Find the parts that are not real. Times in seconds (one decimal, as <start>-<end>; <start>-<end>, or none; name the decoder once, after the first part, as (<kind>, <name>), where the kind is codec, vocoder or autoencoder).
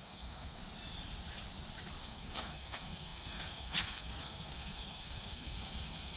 0.0-0.6 (codec, SNAC); 2.0-6.2